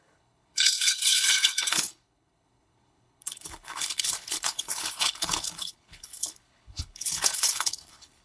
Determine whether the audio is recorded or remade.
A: remade